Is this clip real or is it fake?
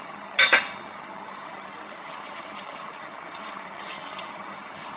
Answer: fake